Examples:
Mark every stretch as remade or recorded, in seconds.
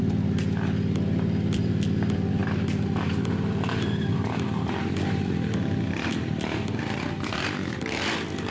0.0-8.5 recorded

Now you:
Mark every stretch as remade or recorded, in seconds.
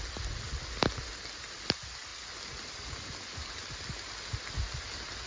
0.0-5.3 recorded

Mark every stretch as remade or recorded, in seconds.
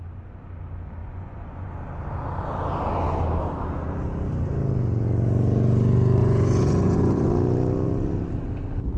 0.0-1.0 recorded; 1.0-1.7 remade; 1.7-6.2 recorded; 6.2-7.3 remade; 7.3-9.0 recorded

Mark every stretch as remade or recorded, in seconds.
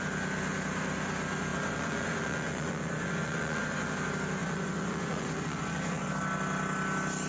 0.0-1.5 recorded; 1.5-3.6 remade; 3.6-4.4 recorded; 4.4-6.1 remade; 6.1-7.3 recorded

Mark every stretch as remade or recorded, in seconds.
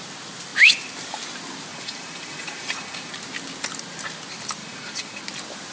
0.0-1.7 recorded; 1.7-3.1 remade; 3.1-4.6 recorded; 4.6-5.2 remade; 5.2-5.7 recorded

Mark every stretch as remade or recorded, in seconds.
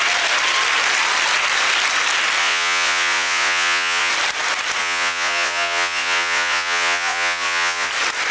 0.0-2.4 recorded; 2.4-4.1 remade; 4.1-4.8 recorded; 4.8-7.9 remade; 7.9-8.3 recorded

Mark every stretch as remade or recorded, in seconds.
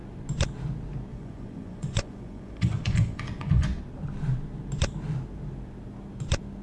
0.0-1.1 recorded; 1.1-3.8 remade; 3.8-6.6 recorded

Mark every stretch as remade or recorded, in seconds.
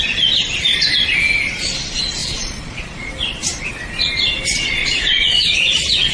0.0-2.2 recorded; 2.2-3.1 remade; 3.1-4.8 recorded; 4.8-6.1 remade